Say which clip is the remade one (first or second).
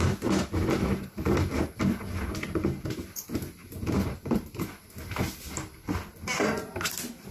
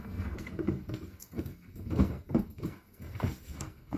second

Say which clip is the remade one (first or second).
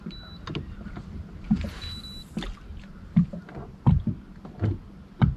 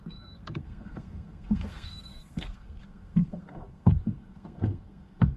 second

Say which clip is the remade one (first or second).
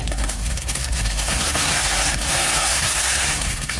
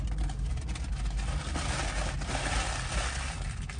first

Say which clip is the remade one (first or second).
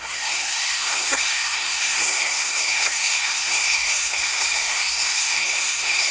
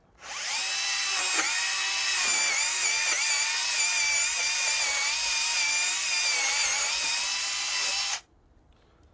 first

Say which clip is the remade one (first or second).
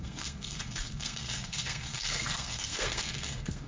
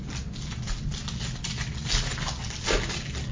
first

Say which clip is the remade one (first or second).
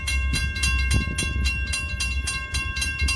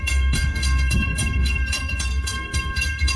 second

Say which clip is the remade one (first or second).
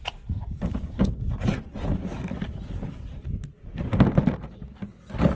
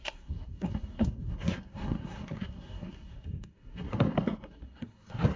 second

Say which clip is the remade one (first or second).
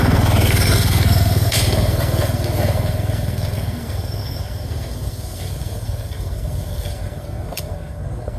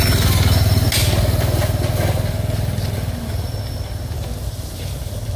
first